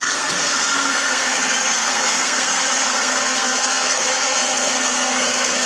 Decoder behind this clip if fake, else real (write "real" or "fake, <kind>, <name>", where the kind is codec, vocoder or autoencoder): fake, codec, SNAC